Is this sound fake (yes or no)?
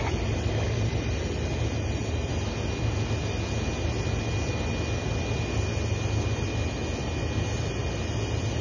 no